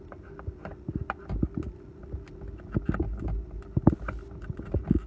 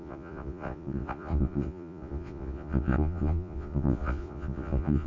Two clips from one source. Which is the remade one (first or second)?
second